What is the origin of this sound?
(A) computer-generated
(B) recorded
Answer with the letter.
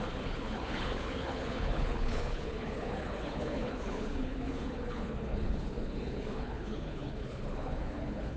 A